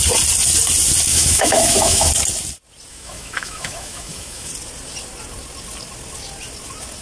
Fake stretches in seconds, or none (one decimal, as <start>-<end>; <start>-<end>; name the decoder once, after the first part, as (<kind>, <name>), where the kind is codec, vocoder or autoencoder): 1.1-2.1 (autoencoder, DAC-VAE); 2.9-4.5

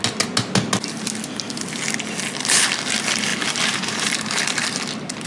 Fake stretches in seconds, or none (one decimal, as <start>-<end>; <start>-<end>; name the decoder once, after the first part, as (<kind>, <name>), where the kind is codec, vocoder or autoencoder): none

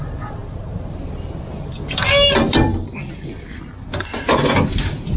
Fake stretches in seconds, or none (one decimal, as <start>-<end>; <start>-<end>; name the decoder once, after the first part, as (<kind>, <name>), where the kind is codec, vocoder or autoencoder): none

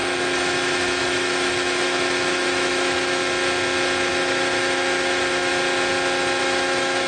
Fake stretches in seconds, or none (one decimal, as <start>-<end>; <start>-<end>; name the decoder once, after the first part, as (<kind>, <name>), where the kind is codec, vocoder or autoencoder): 0.0-3.2 (autoencoder, DAC-VAE); 4.1-5.5; 6.4-7.1